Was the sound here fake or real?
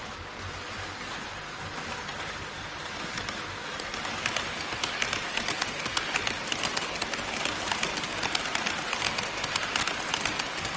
real